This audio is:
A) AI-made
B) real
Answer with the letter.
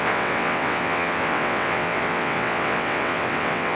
A